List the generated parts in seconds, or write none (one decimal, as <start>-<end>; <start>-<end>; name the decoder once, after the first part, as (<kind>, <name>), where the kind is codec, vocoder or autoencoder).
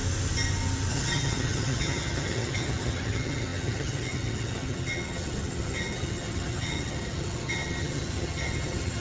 0.9-9.0 (vocoder, HiFi-GAN)